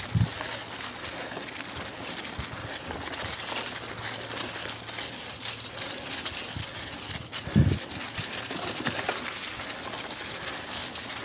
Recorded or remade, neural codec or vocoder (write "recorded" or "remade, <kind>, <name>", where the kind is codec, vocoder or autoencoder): recorded